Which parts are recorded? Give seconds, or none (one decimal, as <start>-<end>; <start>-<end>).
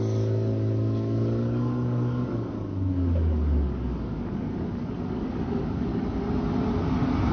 5.9-7.3